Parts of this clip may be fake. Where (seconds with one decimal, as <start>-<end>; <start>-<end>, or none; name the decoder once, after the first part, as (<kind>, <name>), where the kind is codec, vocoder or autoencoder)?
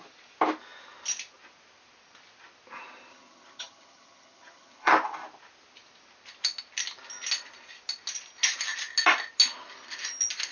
3.1-4.9 (vocoder, HiFi-GAN)